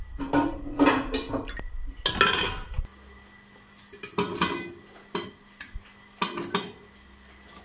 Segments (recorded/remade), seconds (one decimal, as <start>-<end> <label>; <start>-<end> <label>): 0.0-7.6 recorded